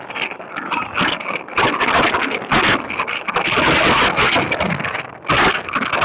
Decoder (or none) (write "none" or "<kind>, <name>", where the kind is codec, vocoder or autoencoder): none